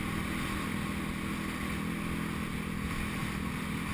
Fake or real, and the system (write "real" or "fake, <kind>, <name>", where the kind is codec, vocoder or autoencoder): real